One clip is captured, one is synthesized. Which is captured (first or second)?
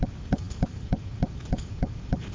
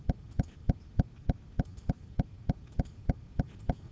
second